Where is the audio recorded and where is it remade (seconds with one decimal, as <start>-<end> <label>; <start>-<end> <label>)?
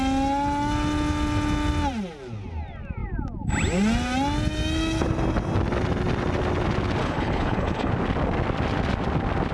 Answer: 0.0-7.0 recorded; 7.0-7.9 remade; 7.9-9.5 recorded